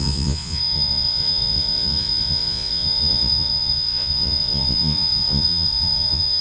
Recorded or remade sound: remade